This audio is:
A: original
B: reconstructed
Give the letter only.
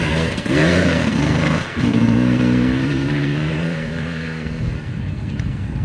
B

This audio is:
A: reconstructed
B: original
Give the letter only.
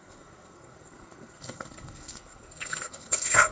A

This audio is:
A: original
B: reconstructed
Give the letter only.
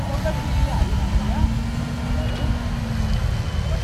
A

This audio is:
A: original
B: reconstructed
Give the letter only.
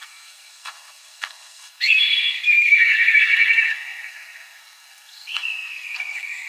B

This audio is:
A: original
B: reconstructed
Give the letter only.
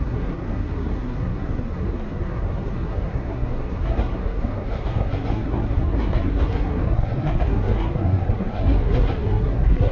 B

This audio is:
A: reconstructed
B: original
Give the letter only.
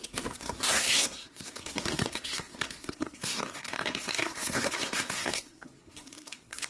A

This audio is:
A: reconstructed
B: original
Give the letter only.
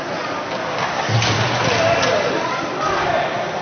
B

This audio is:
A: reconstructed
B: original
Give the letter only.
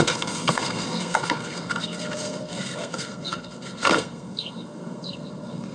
A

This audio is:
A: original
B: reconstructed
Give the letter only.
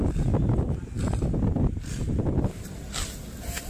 A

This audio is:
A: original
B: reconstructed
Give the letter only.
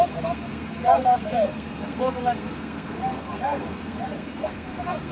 B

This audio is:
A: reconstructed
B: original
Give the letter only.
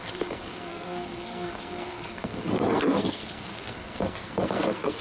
A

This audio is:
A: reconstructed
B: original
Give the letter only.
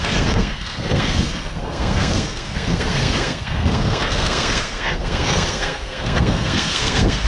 A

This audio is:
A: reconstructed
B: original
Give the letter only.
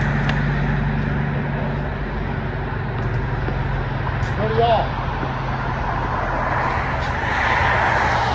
B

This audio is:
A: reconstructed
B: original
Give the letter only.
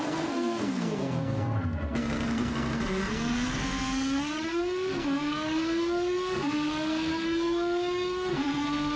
A